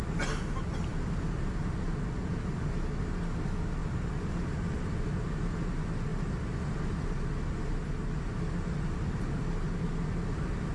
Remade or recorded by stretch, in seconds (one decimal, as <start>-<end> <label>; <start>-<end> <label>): 0.0-0.9 recorded; 0.9-1.6 remade; 1.6-3.8 recorded; 3.8-4.5 remade; 4.5-10.7 recorded